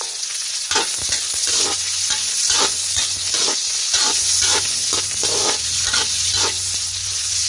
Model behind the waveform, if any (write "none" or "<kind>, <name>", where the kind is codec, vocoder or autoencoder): vocoder, Vocos